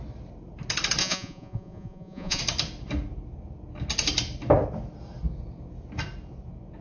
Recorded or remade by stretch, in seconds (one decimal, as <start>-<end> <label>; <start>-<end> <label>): 0.0-1.0 recorded; 1.0-2.4 remade; 2.4-6.8 recorded